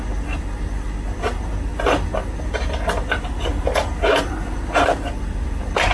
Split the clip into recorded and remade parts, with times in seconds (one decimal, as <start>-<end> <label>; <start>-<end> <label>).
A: 0.0-5.9 recorded